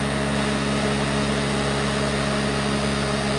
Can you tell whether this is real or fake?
real